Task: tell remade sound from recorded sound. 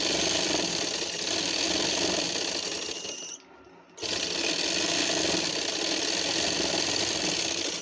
recorded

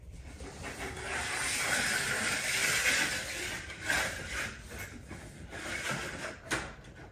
remade